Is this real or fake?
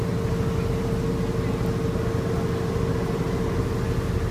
real